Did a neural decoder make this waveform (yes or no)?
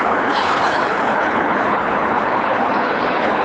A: yes